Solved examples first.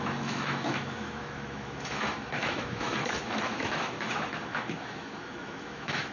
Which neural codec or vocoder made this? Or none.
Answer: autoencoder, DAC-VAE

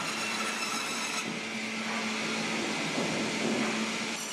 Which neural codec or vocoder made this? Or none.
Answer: none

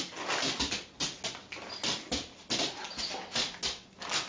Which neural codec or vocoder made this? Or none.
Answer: none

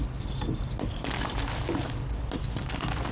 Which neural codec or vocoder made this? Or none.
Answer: none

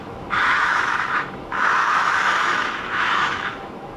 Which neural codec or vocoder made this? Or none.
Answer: autoencoder, DAC-VAE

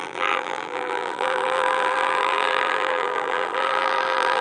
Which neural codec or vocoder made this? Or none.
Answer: vocoder, BigVGAN v2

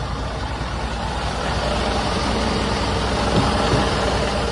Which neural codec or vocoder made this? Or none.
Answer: none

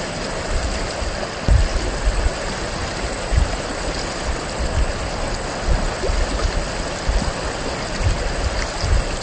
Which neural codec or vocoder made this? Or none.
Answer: none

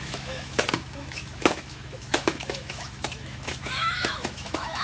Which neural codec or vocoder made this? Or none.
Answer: autoencoder, DAC-VAE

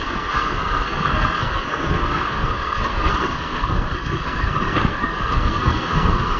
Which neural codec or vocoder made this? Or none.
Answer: codec, SNAC